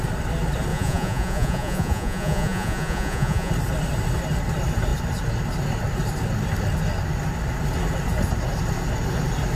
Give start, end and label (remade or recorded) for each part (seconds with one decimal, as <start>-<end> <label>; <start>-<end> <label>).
0.0-0.7 recorded; 0.7-3.5 remade; 3.5-9.6 recorded